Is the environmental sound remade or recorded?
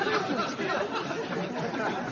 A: recorded